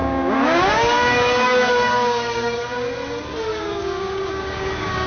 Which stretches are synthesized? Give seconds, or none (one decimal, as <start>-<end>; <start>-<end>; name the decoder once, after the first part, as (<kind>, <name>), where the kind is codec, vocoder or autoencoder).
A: 0.0-2.9 (codec, DAC); 3.5-5.1

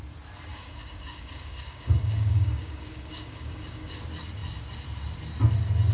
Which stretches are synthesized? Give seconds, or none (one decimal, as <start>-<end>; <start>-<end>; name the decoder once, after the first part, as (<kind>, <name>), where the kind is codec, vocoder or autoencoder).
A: 0.5-4.0 (codec, DAC)

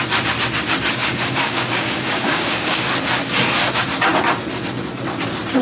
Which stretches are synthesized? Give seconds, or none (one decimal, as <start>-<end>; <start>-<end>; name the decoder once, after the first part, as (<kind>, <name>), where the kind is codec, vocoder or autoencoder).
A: 1.0-2.8 (codec, DAC)

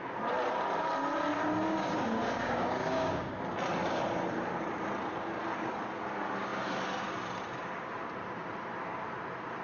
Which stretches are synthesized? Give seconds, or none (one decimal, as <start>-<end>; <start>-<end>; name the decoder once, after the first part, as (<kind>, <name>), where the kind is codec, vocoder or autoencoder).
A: 1.8-3.4 (codec, DAC)

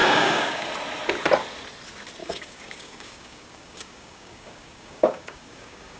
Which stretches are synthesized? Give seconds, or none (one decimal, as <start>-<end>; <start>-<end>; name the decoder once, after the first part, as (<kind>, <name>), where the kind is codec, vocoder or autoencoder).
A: 0.0-0.6 (codec, DAC); 2.2-6.0

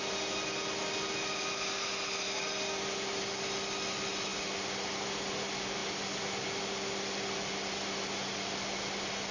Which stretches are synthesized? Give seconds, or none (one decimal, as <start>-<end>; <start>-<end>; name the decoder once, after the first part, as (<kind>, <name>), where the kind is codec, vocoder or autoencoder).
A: none